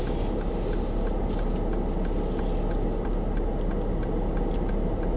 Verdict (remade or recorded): recorded